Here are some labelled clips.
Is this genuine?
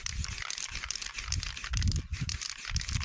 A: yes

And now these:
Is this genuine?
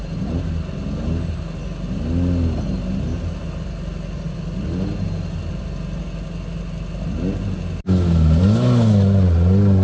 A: yes